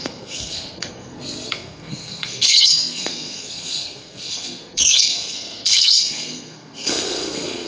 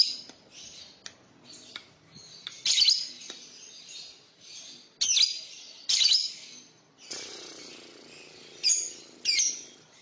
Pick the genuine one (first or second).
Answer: second